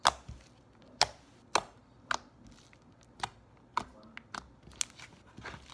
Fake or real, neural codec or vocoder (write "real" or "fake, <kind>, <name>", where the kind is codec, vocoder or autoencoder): real